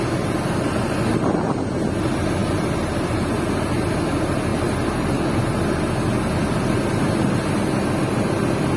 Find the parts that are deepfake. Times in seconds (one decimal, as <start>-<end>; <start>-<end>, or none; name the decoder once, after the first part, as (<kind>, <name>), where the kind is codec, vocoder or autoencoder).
2.4-3.3 (vocoder, BigVGAN v2); 4.5-5.4